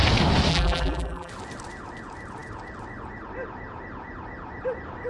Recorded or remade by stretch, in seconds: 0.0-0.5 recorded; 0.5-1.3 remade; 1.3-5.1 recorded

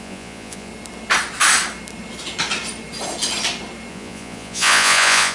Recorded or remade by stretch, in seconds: 0.0-0.7 remade; 0.7-3.9 recorded; 3.9-5.3 remade

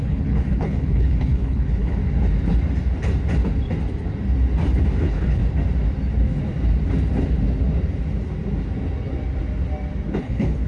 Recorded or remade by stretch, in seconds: 0.0-2.0 remade; 2.0-5.0 recorded; 5.0-5.4 remade; 5.4-10.2 recorded; 10.2-10.7 remade

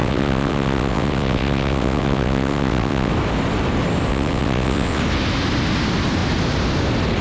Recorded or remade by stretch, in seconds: 0.0-3.1 remade; 3.1-4.1 recorded; 4.1-5.0 remade; 5.0-7.2 recorded

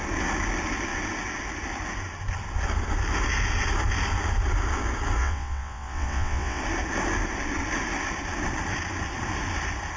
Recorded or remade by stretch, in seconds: 0.0-5.2 recorded; 5.2-6.6 remade; 6.6-10.0 recorded